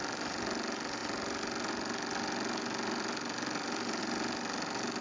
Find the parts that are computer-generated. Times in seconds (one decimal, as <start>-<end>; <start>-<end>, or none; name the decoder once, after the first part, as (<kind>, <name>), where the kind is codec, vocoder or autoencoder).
none

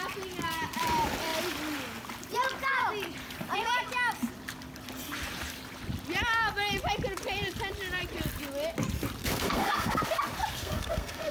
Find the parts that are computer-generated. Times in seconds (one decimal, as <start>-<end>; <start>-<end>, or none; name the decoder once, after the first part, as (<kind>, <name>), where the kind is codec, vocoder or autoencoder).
9.2-10.0 (codec, SNAC); 10.5-11.3